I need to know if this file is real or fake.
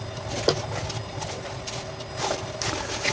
real